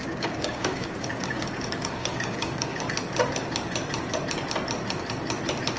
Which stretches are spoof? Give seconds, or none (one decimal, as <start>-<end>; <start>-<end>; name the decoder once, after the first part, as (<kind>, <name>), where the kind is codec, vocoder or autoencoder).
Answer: 0.0-2.8 (codec, DAC)